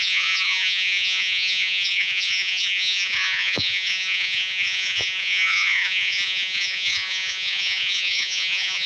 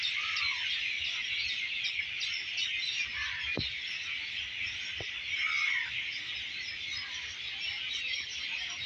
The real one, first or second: second